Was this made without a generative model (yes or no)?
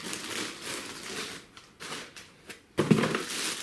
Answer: yes